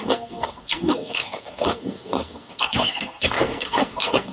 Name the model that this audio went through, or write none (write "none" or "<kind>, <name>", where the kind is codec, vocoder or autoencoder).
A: codec, SNAC